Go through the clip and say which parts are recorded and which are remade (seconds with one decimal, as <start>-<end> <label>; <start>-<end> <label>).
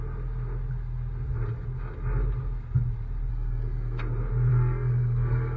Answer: 0.0-3.3 recorded; 3.3-4.0 remade; 4.0-4.5 recorded; 4.5-5.6 remade